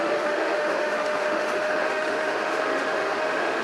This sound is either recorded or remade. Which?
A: remade